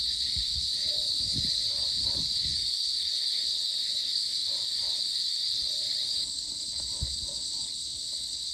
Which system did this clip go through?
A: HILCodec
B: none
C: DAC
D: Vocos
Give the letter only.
A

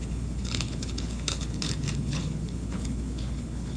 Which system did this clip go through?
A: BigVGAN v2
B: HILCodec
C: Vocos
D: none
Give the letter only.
B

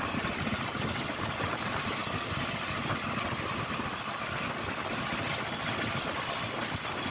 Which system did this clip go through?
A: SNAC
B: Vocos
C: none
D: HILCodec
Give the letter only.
C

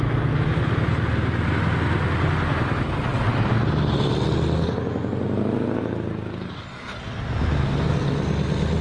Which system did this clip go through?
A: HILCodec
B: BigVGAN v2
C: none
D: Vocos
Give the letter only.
C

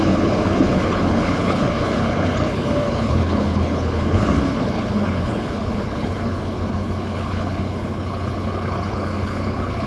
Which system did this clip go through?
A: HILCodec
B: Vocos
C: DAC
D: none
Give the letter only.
A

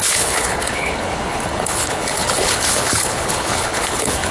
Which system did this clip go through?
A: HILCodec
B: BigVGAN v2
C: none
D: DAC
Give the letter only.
A